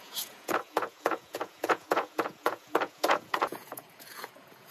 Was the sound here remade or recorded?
remade